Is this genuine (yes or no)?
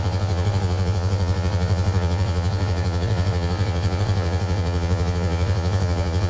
no